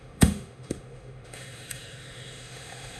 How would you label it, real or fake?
fake